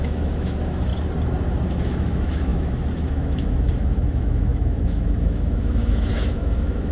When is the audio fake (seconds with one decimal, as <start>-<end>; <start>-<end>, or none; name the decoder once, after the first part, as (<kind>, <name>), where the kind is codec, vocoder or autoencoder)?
0.0-0.9 (autoencoder, DAC-VAE); 1.7-6.9